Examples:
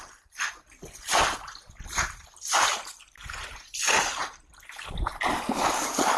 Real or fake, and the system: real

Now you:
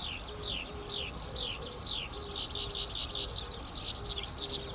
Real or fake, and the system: real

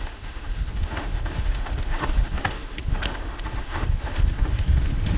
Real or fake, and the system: fake, autoencoder, DAC-VAE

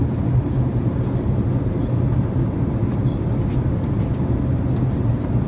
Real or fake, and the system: real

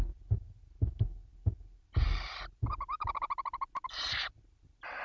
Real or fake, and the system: real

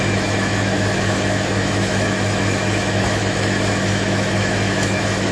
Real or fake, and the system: fake, autoencoder, DAC-VAE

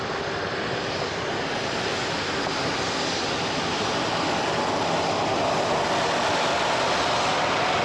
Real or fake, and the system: real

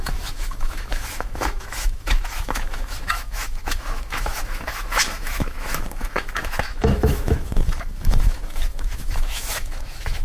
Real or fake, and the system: fake, autoencoder, DAC-VAE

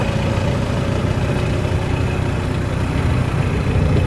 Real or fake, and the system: real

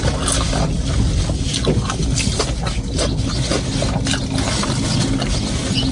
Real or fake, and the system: real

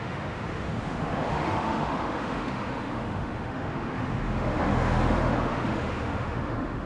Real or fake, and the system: fake, autoencoder, DAC-VAE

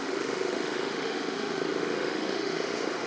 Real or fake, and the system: fake, autoencoder, DAC-VAE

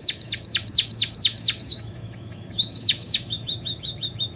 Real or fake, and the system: fake, autoencoder, DAC-VAE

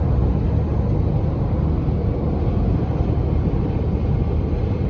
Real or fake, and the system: real